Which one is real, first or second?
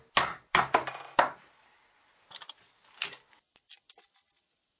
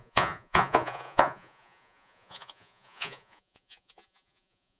first